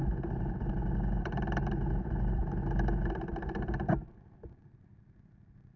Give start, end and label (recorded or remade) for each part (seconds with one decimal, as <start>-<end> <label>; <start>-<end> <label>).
0.0-5.8 recorded